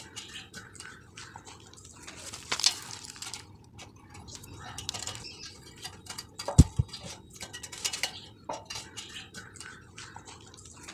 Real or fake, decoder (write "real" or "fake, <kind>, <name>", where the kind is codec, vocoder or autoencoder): real